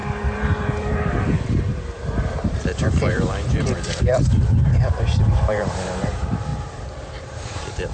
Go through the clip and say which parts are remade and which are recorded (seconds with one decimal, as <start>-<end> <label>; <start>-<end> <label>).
0.0-6.5 remade; 6.5-7.2 recorded; 7.2-7.9 remade